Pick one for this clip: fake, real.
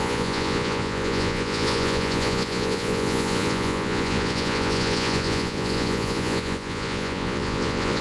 fake